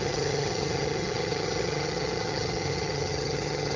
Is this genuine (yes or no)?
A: no